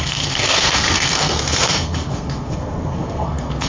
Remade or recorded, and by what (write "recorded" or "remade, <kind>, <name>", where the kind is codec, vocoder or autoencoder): remade, codec, SNAC